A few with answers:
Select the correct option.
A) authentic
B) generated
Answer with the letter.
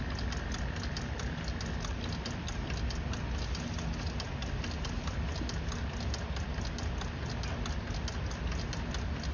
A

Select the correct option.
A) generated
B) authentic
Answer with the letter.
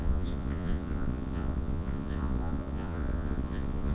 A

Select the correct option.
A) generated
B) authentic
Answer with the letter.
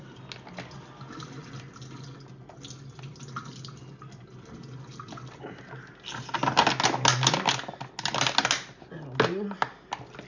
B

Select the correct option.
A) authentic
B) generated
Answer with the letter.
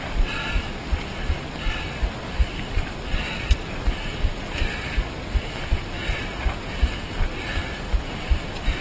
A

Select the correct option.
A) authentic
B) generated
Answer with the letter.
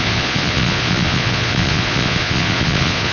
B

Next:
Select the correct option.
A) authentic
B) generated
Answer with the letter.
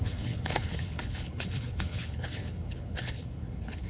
B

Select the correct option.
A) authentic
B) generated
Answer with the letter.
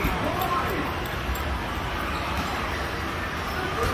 A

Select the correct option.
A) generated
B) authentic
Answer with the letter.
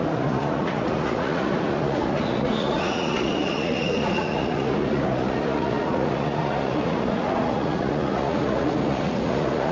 A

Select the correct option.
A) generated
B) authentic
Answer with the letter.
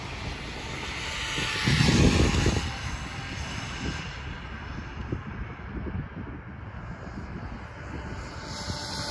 B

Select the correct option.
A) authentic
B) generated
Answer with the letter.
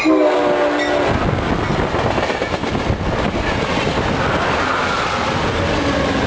A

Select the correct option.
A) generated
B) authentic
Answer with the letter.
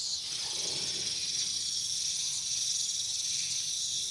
B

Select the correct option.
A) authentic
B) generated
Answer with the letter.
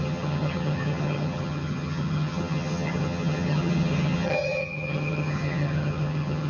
B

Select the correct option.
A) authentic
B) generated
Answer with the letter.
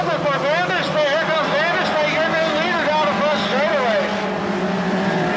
A